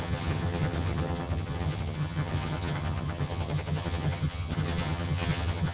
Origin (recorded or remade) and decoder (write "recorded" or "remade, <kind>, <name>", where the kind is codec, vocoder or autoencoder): remade, vocoder, HiFi-GAN